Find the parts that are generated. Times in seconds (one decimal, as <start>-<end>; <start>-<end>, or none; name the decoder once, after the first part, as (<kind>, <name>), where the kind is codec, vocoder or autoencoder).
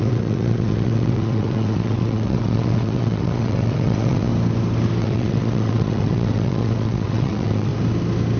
0.0-4.3 (vocoder, WaveNeXt); 5.0-7.7